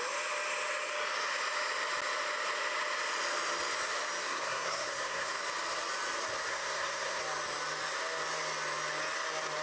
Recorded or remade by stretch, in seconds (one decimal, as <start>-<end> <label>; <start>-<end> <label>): 0.0-4.2 recorded; 4.2-5.4 remade; 5.4-6.5 recorded; 6.5-7.2 remade; 7.2-9.6 recorded